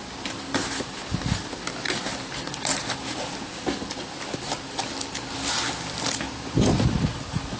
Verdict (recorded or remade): recorded